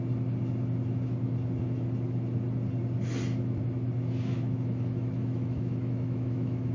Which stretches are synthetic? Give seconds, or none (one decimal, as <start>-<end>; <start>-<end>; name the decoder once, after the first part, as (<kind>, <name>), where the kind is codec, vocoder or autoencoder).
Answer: 4.3-6.7 (autoencoder, DAC-VAE)

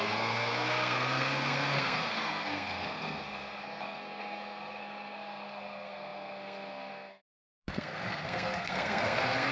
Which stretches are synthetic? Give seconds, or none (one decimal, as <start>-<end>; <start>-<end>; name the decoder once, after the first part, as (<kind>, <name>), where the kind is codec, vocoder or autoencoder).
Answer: 0.0-9.5 (codec, SNAC)

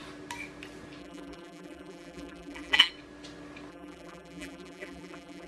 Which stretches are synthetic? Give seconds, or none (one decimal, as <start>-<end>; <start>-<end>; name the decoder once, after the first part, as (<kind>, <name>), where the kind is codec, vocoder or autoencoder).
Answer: 1.0-2.9 (vocoder, BigVGAN v2); 3.7-5.5

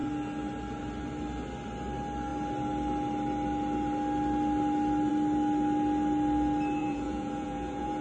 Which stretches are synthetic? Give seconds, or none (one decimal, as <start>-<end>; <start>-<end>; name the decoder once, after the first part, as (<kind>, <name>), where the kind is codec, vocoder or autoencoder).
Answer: 6.8-8.0 (vocoder, Vocos)

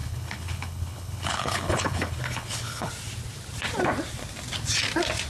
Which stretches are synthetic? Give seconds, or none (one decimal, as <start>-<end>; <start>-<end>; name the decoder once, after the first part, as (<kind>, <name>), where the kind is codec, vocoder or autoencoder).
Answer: 0.0-2.9 (codec, HILCodec)